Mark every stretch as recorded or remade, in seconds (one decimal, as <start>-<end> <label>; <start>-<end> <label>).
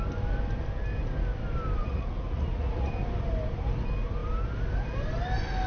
0.0-1.8 recorded; 1.8-2.9 remade; 2.9-5.7 recorded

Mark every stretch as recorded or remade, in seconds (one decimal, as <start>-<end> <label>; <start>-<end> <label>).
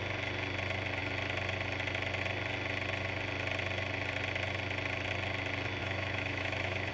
0.0-5.8 recorded; 5.8-6.9 remade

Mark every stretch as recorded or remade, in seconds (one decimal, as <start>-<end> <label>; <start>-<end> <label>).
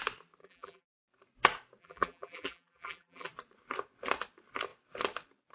0.0-0.4 recorded; 0.4-0.9 remade; 0.9-1.8 recorded; 1.8-3.3 remade; 3.3-5.5 recorded